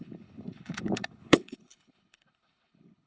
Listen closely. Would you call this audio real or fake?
fake